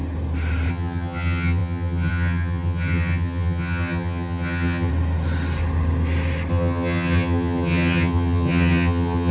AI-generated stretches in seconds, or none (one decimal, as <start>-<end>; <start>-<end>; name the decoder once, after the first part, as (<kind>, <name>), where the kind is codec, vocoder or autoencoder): 0.7-4.9 (vocoder, HiFi-GAN); 6.5-9.3

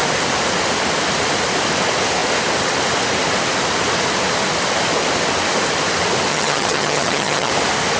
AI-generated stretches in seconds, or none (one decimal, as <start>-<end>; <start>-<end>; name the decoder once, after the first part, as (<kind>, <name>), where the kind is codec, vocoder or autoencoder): 6.3-7.5 (vocoder, HiFi-GAN)

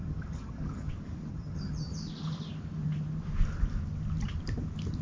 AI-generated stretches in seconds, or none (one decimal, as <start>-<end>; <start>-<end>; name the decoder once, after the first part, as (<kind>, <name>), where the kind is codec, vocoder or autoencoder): 0.0-0.9 (vocoder, HiFi-GAN); 1.3-1.9